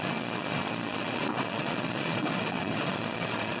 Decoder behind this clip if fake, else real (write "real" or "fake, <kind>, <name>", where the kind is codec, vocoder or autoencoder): fake, vocoder, Vocos